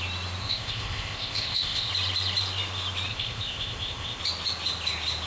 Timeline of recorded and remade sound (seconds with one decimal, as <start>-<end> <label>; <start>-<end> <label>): 0.0-0.4 recorded; 0.4-1.9 remade; 1.9-3.1 recorded; 3.1-4.2 remade; 4.2-5.3 recorded